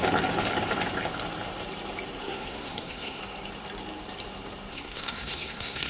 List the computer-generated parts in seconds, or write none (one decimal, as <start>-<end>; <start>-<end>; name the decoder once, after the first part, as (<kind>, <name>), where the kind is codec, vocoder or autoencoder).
2.2-3.2 (codec, SNAC); 4.7-5.9